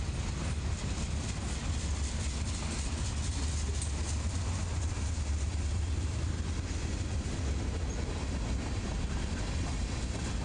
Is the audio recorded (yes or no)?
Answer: yes